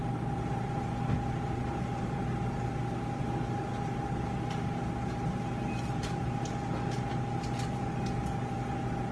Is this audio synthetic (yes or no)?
no